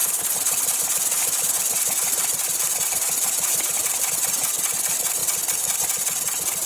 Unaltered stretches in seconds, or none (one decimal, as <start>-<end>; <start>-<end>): 4.0-6.7